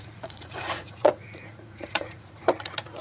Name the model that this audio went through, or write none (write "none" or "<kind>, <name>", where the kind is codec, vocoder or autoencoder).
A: vocoder, Vocos